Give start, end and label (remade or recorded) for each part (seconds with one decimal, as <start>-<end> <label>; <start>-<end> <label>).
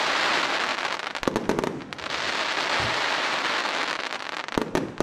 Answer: 0.0-3.6 recorded; 3.6-4.1 remade; 4.1-5.0 recorded